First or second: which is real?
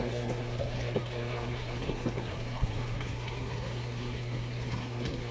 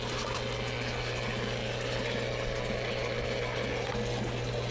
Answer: second